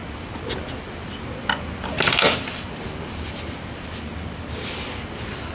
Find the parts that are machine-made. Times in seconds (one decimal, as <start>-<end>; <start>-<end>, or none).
none